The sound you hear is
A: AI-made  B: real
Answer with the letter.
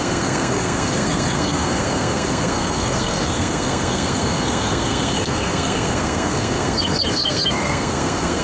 A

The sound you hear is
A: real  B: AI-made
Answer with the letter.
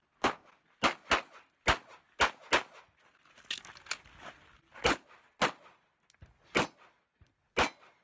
A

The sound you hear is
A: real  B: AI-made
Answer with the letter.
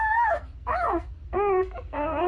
B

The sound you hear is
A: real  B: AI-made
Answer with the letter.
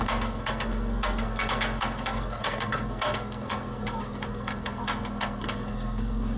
B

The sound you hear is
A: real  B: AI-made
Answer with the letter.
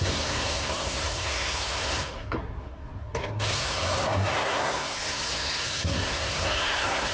B